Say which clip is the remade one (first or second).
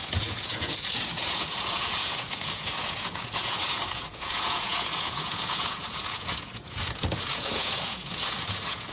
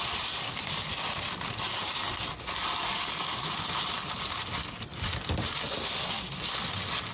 first